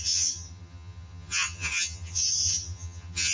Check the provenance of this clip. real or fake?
fake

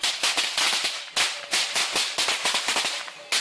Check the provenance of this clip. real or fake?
real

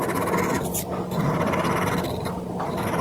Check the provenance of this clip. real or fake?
real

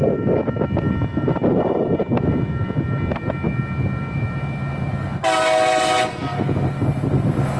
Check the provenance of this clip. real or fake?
real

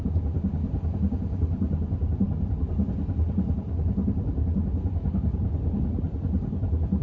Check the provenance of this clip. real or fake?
real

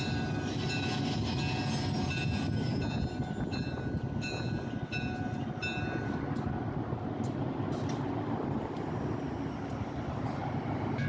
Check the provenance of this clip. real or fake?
real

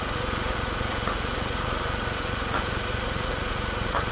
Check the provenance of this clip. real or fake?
fake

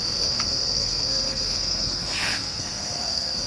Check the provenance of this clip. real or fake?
fake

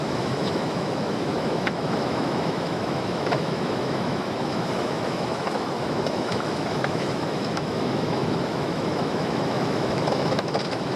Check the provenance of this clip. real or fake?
fake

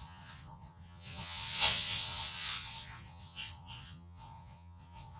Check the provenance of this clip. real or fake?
fake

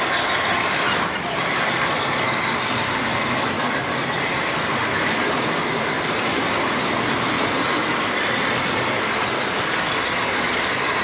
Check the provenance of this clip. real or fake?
real